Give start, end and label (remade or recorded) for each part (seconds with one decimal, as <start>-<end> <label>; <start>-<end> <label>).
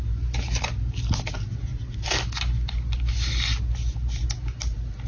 0.0-5.1 recorded